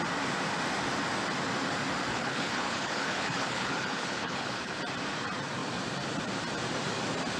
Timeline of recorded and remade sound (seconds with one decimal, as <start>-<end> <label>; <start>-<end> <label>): 0.0-2.1 recorded; 2.1-4.8 remade; 4.8-7.4 recorded